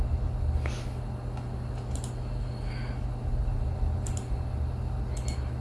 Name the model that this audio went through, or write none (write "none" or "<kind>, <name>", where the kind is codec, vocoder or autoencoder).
none